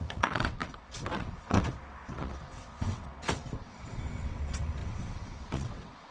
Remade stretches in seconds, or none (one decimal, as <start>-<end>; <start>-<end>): 0.0-6.1